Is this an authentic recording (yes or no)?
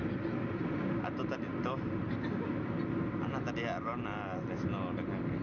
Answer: yes